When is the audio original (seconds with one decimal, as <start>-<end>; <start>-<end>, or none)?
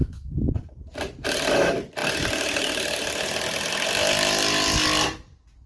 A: 0.5-5.7